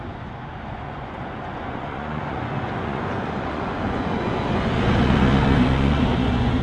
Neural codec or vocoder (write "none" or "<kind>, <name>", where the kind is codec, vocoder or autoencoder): vocoder, Vocos